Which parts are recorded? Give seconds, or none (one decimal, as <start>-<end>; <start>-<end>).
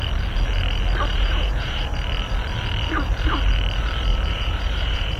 0.0-1.1; 1.8-4.1